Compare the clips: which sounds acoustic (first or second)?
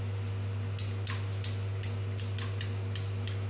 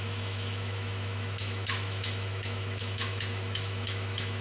first